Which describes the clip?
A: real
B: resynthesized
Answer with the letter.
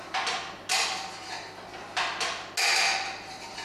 A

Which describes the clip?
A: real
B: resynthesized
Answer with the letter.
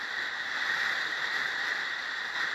B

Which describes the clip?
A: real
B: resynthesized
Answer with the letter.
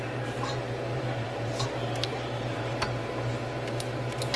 B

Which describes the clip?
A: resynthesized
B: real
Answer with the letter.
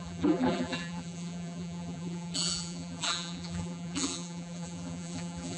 A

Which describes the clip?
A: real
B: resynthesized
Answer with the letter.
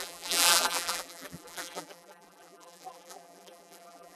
B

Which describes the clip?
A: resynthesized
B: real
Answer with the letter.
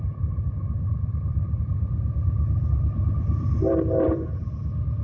A